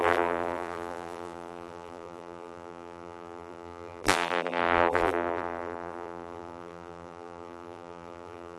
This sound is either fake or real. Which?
fake